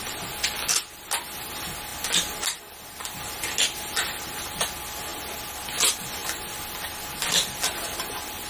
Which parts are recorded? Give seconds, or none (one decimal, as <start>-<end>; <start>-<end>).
0.0-8.5